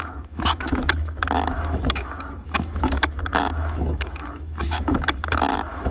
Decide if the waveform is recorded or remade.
remade